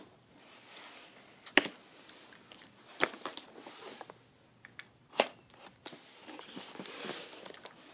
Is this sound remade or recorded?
recorded